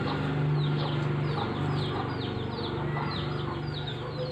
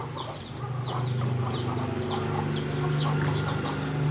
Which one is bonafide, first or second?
first